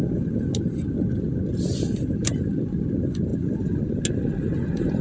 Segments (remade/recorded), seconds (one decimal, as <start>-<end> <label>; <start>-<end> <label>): 0.0-5.0 recorded